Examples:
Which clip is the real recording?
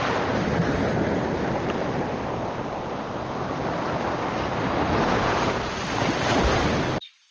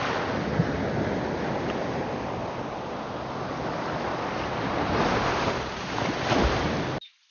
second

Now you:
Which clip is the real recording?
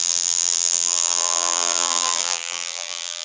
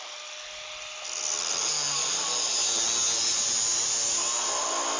second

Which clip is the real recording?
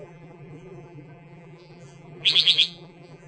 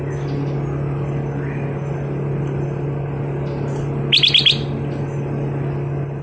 second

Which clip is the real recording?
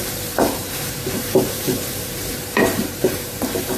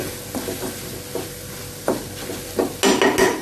second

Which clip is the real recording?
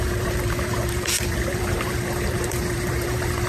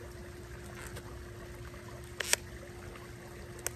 second